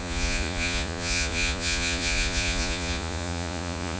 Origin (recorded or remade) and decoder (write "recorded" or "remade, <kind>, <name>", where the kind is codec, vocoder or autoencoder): remade, vocoder, Vocos